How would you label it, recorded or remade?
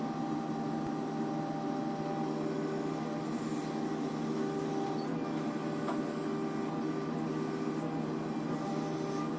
recorded